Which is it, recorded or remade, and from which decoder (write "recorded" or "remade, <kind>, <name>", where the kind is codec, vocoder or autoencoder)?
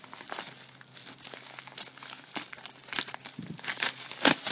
recorded